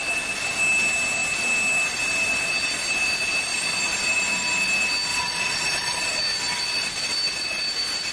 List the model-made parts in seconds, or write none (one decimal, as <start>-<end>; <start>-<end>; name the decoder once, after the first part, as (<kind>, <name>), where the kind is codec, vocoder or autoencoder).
5.1-6.2 (vocoder, Vocos)